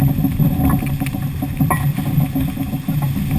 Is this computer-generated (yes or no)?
no